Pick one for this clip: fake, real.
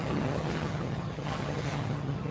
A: fake